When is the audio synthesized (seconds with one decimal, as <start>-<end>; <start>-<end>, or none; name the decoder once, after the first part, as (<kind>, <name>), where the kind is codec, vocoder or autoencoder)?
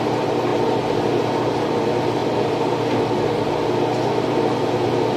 0.5-1.0 (vocoder, BigVGAN v2)